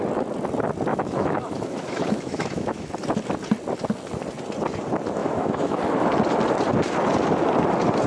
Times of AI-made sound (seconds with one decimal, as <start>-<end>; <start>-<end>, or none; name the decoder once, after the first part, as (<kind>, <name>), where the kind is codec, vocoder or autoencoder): 0.9-2.9 (autoencoder, DAC-VAE); 5.2-5.8